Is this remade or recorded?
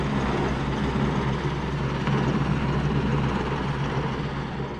recorded